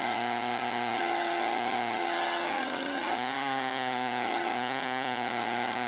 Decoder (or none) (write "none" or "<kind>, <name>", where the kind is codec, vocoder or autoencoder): vocoder, HiFi-GAN